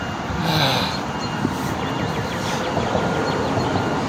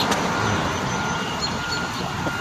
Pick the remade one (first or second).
second